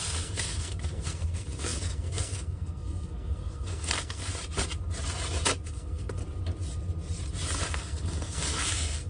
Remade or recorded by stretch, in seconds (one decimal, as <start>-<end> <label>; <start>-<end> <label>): 0.0-4.3 remade; 4.3-5.7 recorded; 5.7-6.2 remade; 6.2-7.7 recorded; 7.7-9.1 remade